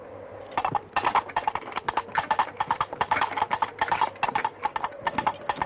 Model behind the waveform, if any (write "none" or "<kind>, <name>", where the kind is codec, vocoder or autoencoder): none